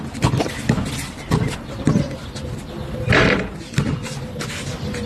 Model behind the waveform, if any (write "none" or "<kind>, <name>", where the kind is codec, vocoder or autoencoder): none